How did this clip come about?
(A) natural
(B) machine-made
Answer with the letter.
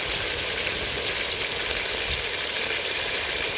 A